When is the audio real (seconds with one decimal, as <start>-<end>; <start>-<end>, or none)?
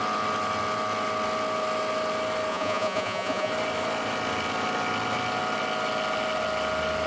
0.0-2.5; 3.5-7.1